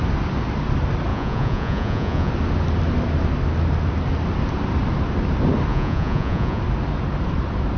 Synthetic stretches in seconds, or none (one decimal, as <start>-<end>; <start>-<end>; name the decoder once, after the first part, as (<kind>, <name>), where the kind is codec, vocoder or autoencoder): 1.1-2.3 (vocoder, Vocos); 5.7-6.6